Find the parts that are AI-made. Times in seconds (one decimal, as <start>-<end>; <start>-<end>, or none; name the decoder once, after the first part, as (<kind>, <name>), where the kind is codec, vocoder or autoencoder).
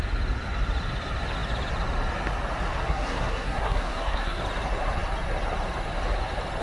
2.8-4.4 (codec, SNAC)